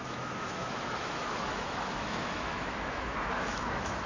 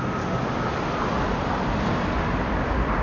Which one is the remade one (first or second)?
first